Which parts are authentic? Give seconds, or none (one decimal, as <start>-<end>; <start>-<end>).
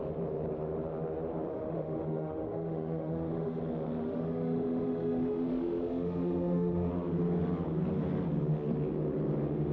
0.0-1.5; 3.6-4.0; 6.9-9.7